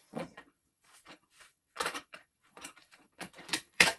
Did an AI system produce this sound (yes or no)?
yes